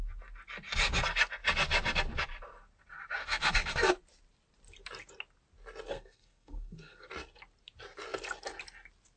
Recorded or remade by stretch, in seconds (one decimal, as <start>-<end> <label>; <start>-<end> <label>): 0.0-3.2 recorded; 3.2-3.9 remade; 3.9-5.9 recorded; 5.9-7.1 remade; 7.1-9.2 recorded